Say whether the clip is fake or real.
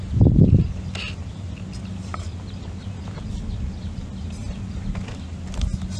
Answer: real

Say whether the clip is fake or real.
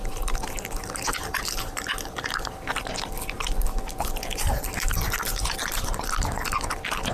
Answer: real